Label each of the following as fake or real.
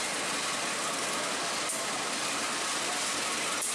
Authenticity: real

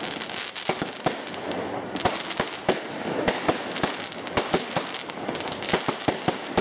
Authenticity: real